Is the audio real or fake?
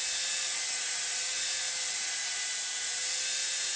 real